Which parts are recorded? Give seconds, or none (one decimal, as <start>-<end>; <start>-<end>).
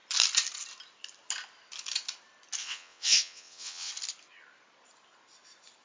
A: 0.0-2.6; 3.9-5.8